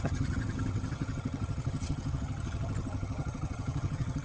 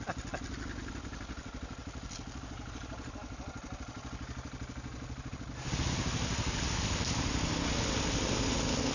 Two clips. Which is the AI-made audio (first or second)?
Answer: first